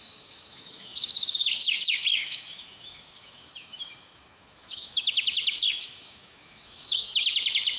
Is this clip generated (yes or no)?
yes